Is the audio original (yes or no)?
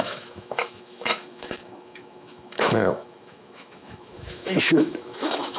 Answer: no